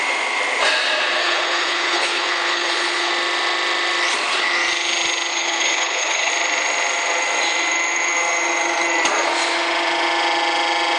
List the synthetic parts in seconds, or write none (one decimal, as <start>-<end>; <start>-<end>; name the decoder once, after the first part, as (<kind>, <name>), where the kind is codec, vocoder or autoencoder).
1.2-3.1 (codec, HILCodec); 5.3-6.3